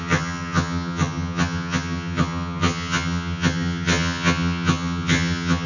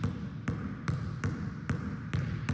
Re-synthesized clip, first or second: first